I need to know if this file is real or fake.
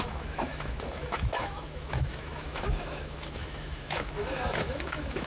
fake